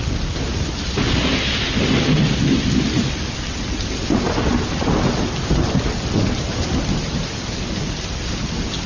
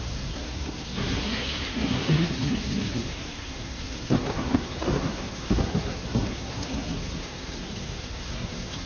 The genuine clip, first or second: first